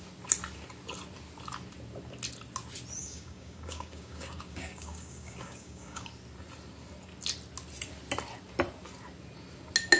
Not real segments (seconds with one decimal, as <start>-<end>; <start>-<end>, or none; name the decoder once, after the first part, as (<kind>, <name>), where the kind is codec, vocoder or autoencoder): 3.0-6.1 (codec, DAC)